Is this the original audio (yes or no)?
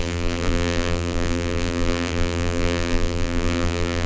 no